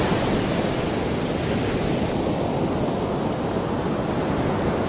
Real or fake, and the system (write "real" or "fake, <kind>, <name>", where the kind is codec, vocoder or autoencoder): real